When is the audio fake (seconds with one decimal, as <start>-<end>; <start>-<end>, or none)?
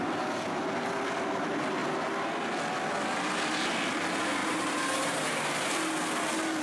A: 4.4-5.4